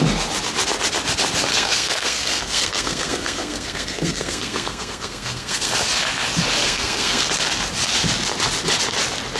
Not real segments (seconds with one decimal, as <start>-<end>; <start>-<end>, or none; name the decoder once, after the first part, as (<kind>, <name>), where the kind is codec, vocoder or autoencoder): 1.5-5.7 (codec, SNAC); 6.6-7.3